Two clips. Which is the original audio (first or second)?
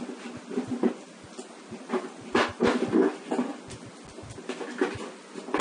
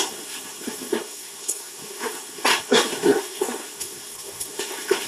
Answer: first